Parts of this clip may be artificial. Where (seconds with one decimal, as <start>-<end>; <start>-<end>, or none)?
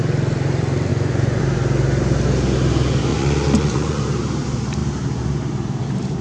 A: 0.9-1.4; 3.1-4.0